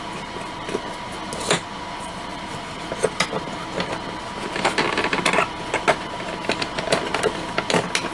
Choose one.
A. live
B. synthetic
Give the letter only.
A